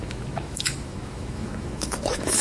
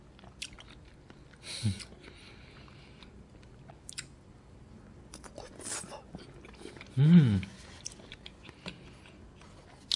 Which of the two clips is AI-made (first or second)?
first